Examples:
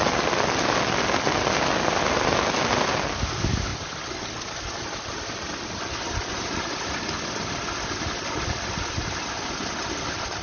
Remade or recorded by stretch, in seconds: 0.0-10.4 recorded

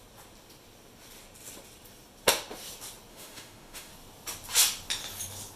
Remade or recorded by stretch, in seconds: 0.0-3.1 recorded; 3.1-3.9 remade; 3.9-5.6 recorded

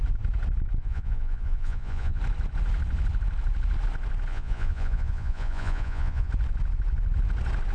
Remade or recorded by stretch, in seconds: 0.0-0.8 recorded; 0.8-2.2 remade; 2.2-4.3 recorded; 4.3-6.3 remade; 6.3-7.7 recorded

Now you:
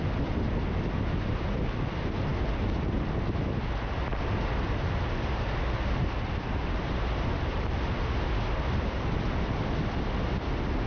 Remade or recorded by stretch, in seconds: 0.0-10.9 recorded

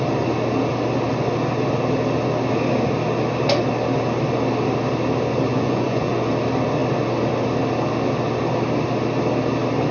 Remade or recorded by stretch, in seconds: 0.0-5.5 recorded; 5.5-6.3 remade; 6.3-9.9 recorded

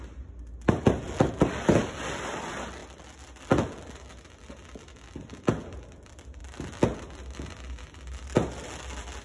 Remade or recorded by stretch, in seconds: 0.0-9.2 recorded